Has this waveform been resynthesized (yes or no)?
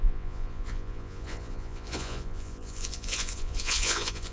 yes